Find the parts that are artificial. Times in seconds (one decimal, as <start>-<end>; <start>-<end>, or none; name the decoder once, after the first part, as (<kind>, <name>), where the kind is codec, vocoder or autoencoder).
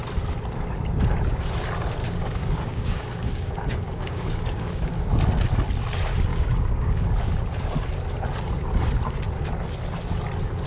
2.0-5.1 (codec, DAC); 6.3-7.1